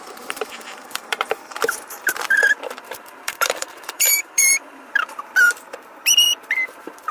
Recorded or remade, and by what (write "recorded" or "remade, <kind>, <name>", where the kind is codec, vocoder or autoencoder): remade, vocoder, BigVGAN v2